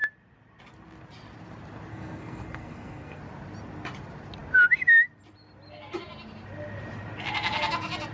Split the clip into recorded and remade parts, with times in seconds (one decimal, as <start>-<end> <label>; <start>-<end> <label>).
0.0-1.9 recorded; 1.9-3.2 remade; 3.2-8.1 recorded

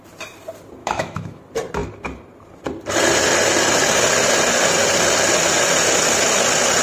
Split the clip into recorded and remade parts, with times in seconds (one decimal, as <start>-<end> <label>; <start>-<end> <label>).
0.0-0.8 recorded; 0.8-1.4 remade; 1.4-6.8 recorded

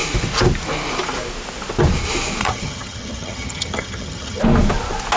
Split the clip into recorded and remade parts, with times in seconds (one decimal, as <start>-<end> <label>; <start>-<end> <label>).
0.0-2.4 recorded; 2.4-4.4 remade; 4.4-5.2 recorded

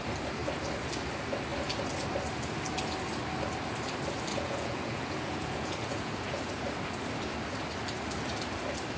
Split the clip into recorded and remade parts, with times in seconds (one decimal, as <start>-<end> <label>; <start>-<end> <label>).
0.0-4.3 recorded; 4.3-6.5 remade; 6.5-9.0 recorded

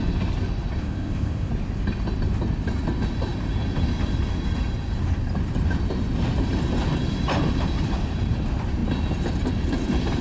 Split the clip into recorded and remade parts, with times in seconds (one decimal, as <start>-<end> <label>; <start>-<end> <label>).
0.0-0.8 recorded; 0.8-1.5 remade; 1.5-10.2 recorded

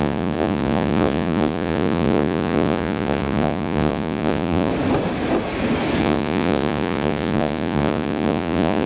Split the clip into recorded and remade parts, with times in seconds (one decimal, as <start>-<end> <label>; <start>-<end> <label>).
0.0-4.7 remade; 4.7-6.0 recorded; 6.0-8.9 remade

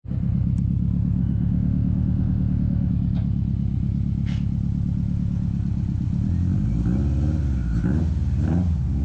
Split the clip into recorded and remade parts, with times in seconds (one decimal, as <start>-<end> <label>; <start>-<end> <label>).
0.0-1.2 recorded; 1.2-2.9 remade; 2.9-9.0 recorded